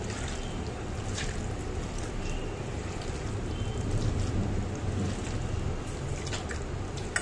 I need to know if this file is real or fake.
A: real